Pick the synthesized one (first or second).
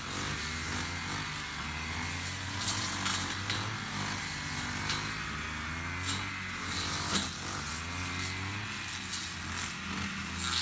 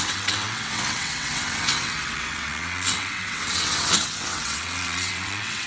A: second